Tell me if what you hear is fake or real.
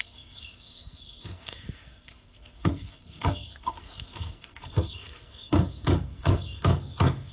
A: fake